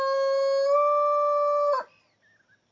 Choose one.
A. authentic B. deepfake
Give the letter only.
A